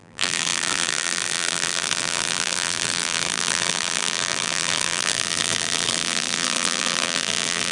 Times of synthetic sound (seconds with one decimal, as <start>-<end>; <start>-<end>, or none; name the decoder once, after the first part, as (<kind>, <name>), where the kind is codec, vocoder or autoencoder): 0.0-7.7 (vocoder, BigVGAN v2)